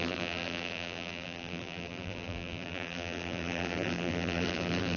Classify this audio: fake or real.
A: fake